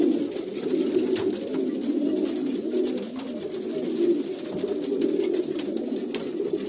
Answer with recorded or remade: recorded